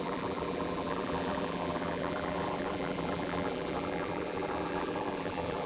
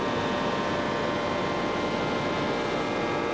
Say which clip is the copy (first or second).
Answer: first